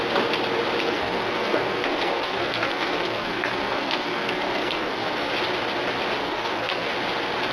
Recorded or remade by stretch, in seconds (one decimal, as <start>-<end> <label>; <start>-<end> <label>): 0.0-0.8 recorded; 0.8-5.3 remade; 5.3-6.2 recorded; 6.2-6.9 remade; 6.9-7.5 recorded